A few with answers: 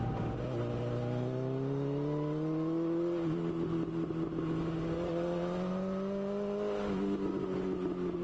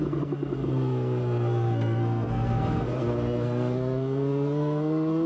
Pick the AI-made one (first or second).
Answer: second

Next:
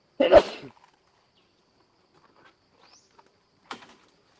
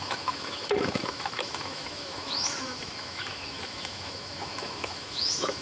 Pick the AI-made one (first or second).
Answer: second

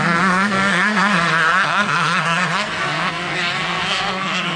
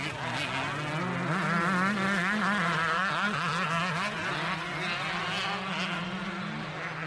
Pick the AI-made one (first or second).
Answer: first